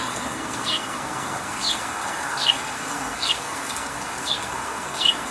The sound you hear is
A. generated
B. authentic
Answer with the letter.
A